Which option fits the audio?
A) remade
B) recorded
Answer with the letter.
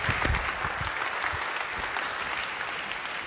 B